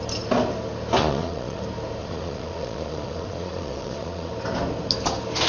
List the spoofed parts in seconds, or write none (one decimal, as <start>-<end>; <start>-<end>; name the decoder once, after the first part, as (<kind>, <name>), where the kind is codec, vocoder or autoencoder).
1.0-1.6 (vocoder, Vocos); 2.0-4.3